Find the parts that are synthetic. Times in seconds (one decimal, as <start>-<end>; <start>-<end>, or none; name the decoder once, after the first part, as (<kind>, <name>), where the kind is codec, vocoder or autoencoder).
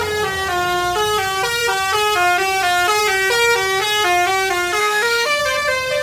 4.8-5.4 (autoencoder, DAC-VAE)